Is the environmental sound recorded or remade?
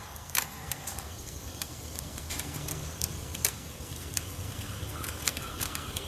remade